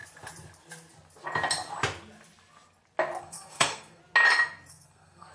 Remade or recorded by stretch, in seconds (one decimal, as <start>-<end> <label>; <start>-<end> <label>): 0.0-3.2 recorded; 3.2-4.0 remade; 4.0-4.7 recorded; 4.7-5.3 remade